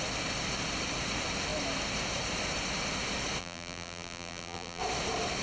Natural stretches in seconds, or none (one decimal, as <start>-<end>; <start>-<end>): 0.0-3.4; 4.8-5.4